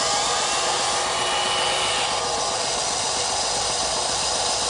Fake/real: real